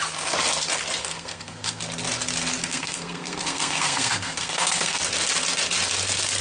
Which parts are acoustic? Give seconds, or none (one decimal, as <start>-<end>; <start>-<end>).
0.0-1.0; 1.8-2.6; 5.0-6.4